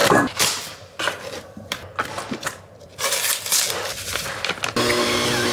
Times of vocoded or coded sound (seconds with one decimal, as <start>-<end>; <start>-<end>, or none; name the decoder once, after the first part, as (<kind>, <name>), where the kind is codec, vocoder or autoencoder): 0.0-0.6 (vocoder, BigVGAN v2)